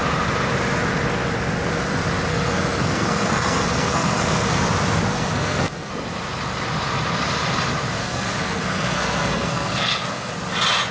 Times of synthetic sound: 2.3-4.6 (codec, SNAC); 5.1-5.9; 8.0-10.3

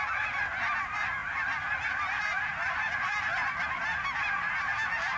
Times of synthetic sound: none

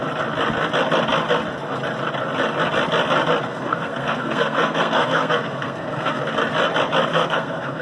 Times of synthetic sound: 3.5-6.2 (codec, SNAC); 7.1-7.8

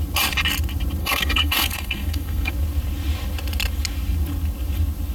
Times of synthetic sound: 1.0-2.5 (codec, SNAC)

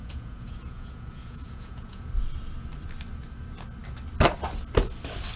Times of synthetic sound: 0.0-2.1 (vocoder, Vocos)

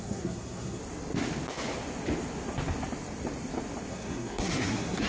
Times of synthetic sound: 0.0-0.8 (codec, SNAC); 3.9-5.1